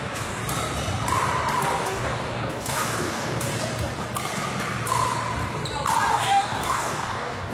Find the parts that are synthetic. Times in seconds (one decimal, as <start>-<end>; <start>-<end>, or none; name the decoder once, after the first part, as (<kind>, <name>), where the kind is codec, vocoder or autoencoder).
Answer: 0.0-0.4 (codec, DAC); 1.8-3.5; 6.1-7.5